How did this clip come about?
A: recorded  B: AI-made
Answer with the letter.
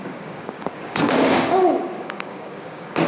B